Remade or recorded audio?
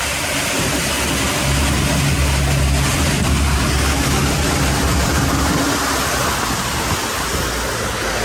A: recorded